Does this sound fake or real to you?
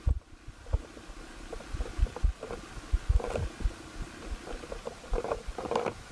fake